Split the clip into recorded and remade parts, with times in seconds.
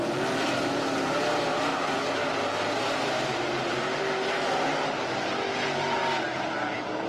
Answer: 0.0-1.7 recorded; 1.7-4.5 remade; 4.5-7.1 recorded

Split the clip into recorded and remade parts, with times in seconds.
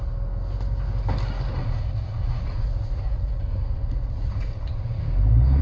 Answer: 0.0-1.6 recorded; 1.6-5.0 remade; 5.0-5.6 recorded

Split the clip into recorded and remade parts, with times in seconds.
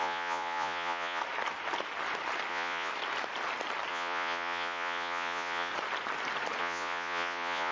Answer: 0.0-1.2 remade; 1.2-2.5 recorded; 2.5-2.9 remade; 2.9-3.9 recorded; 3.9-5.7 remade; 5.7-6.6 recorded; 6.6-7.7 remade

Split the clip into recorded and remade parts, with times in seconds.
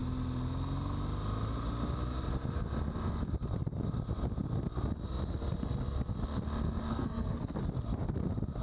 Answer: 0.0-6.9 recorded; 6.9-7.6 remade; 7.6-8.6 recorded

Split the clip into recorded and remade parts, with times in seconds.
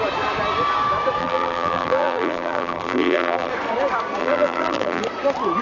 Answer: 0.0-1.2 recorded; 1.2-3.5 remade; 3.5-4.2 recorded; 4.2-5.0 remade; 5.0-5.6 recorded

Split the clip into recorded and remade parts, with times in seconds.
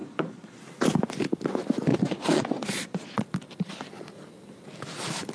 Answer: 0.0-0.6 remade; 0.6-1.9 recorded; 1.9-3.2 remade; 3.2-5.3 recorded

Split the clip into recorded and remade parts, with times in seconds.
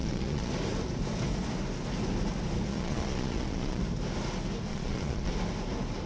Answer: 0.0-0.5 remade; 0.5-2.7 recorded; 2.7-3.8 remade; 3.8-4.7 recorded; 4.7-5.3 remade; 5.3-6.1 recorded